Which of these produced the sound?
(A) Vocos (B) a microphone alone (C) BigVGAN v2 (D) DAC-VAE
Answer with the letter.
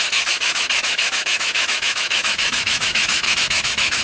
D